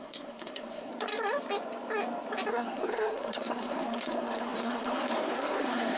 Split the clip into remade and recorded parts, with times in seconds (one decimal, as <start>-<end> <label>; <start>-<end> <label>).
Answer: 0.0-0.9 remade; 0.9-2.5 recorded; 2.5-6.0 remade